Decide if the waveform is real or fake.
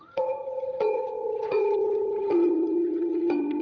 fake